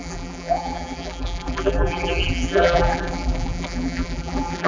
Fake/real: fake